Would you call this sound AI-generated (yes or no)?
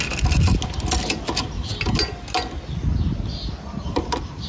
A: no